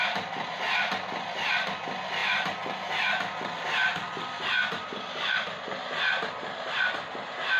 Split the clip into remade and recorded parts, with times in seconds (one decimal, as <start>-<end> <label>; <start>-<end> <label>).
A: 0.0-7.6 recorded